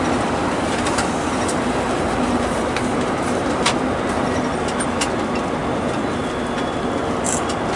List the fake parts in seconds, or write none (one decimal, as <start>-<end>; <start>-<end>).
none